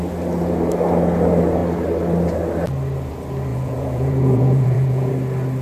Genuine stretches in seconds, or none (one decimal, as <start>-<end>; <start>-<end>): 0.0-3.5; 5.1-5.6

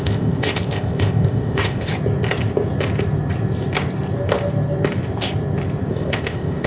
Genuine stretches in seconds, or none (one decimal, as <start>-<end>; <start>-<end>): 1.9-5.9

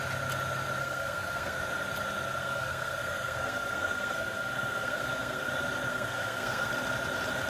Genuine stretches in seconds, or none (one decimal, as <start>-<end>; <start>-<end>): 0.0-0.8; 1.6-2.4; 5.5-5.9; 6.7-7.5

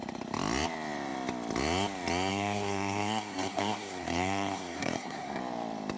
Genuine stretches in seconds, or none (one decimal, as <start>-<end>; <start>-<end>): 0.0-2.3; 5.4-6.0

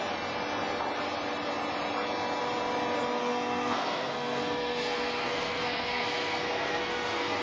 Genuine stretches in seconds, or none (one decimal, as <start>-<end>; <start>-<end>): 0.0-3.2

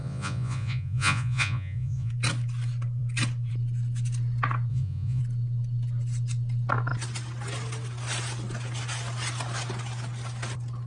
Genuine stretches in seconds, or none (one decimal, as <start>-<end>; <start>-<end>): 2.1-4.7; 5.2-10.9

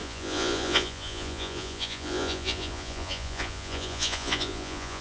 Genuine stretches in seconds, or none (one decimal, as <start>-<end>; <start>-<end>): none